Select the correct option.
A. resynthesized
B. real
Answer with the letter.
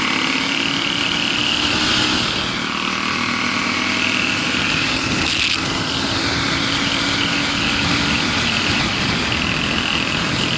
B